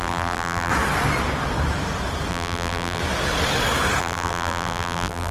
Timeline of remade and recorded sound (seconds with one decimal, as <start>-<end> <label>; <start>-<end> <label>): 0.0-0.7 remade; 0.7-2.3 recorded; 2.3-3.0 remade; 3.0-4.0 recorded; 4.0-5.3 remade